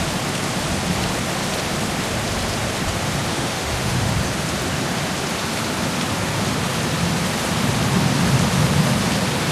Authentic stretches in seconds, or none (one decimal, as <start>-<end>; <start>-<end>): 0.0-3.3; 4.1-9.5